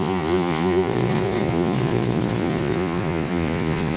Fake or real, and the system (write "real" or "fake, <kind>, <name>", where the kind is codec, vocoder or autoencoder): fake, vocoder, Vocos